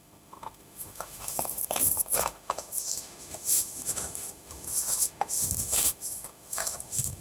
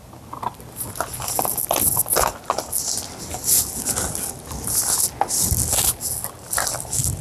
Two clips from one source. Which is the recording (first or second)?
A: second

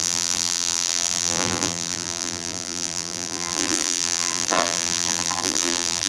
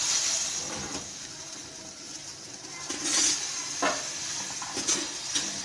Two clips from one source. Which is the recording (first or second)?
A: second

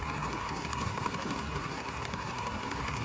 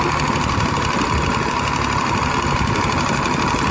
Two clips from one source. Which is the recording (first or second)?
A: second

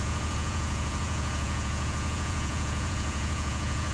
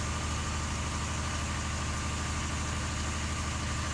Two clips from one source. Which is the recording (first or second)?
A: second